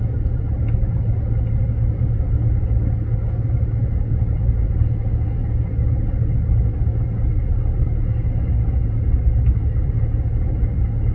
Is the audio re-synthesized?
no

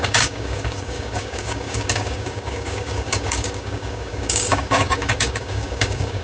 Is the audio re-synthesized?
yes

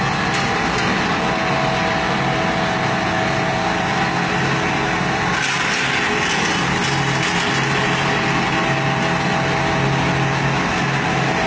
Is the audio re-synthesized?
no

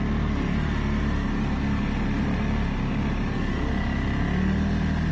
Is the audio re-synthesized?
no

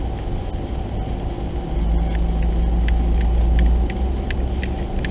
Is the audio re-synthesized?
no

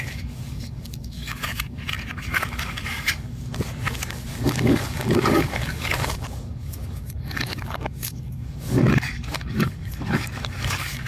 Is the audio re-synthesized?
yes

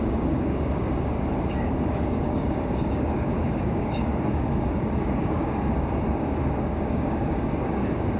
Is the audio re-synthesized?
yes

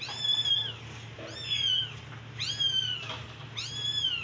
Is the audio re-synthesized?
no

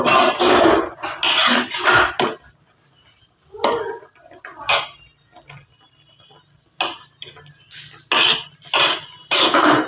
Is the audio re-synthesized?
no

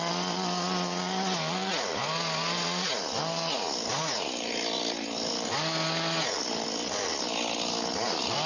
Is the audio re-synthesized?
no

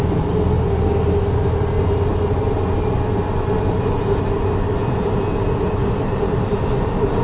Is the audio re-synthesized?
no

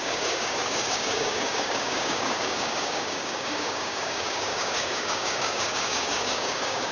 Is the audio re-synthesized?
yes